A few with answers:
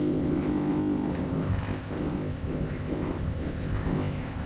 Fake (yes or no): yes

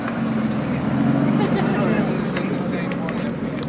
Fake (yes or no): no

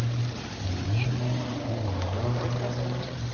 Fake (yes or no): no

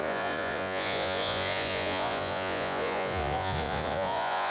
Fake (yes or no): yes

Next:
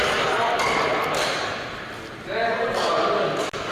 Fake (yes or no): no